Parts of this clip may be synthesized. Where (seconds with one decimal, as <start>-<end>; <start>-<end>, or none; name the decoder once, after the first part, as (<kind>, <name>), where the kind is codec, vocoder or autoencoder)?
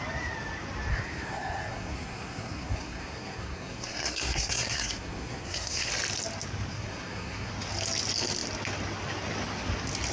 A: 0.9-5.9 (codec, SNAC); 6.7-7.5